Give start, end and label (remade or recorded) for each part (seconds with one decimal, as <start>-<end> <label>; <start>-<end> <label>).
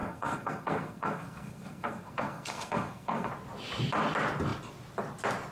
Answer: 0.0-3.3 remade; 3.3-5.5 recorded